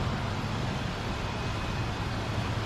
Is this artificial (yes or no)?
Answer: no